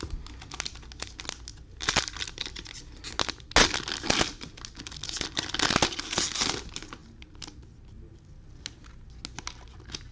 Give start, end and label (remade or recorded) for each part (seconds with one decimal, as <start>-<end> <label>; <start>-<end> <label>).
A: 0.0-1.5 recorded; 1.5-3.0 remade; 3.0-10.1 recorded